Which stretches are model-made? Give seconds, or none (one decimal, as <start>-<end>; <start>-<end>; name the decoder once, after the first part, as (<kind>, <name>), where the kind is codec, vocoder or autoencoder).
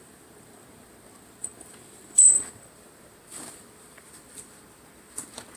0.0-5.6 (vocoder, BigVGAN v2)